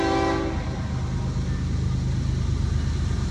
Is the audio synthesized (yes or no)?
no